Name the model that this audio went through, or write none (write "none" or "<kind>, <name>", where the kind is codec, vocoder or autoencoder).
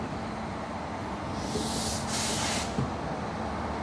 none